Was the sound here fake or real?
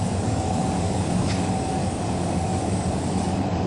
fake